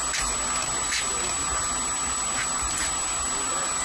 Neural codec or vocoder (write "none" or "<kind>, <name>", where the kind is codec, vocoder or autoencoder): none